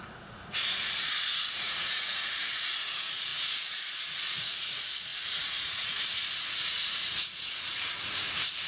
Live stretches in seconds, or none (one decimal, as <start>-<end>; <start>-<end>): none